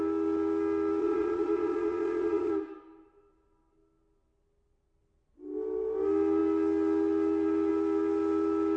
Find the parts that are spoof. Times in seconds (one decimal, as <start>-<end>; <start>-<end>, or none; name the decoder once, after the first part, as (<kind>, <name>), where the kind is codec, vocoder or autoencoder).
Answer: 1.0-2.5 (vocoder, Vocos)